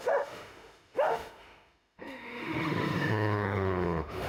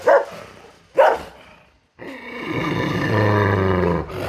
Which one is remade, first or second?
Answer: first